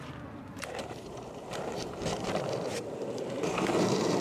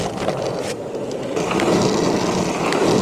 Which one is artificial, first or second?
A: first